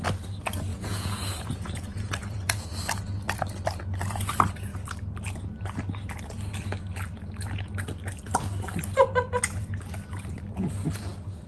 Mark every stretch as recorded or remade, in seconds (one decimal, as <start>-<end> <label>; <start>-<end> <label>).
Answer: 0.0-0.7 recorded; 0.7-2.7 remade; 2.7-11.5 recorded